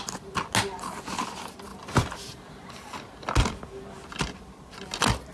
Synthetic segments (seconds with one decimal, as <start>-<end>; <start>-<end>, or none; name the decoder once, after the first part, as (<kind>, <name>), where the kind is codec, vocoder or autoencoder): none